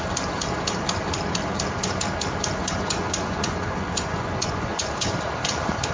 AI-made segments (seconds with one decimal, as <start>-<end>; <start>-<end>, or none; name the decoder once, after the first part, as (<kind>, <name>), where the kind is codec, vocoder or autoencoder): 2.6-4.9 (vocoder, Vocos)